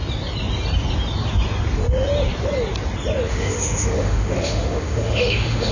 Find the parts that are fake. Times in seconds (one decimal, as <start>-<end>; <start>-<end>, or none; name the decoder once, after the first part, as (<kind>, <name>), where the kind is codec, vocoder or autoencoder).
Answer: 3.3-5.7 (autoencoder, DAC-VAE)